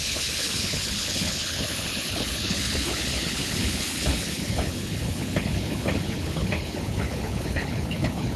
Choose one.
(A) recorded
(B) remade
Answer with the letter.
B